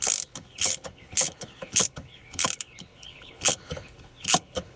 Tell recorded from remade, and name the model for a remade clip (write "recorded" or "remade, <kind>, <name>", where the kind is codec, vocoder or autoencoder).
remade, codec, HILCodec